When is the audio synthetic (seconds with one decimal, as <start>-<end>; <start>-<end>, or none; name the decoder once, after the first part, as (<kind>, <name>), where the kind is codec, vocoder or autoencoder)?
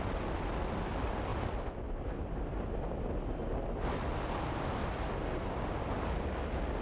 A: none